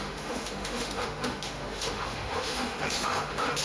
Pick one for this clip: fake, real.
fake